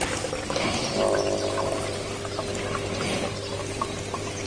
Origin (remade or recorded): recorded